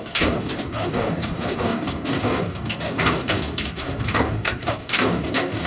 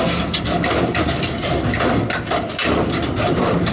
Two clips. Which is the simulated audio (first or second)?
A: first